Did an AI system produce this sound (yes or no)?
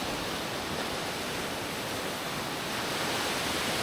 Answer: no